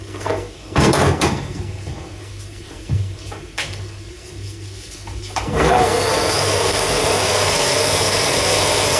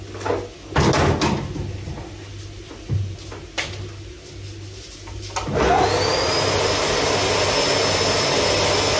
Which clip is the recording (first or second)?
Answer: second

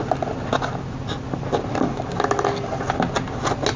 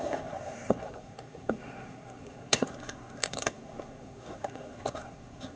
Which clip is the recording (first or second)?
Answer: first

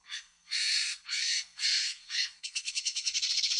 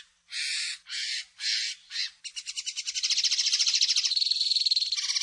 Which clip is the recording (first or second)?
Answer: second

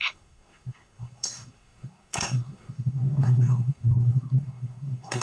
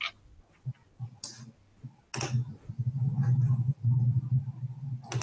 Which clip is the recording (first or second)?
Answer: second